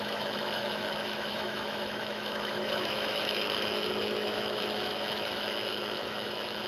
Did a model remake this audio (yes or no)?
yes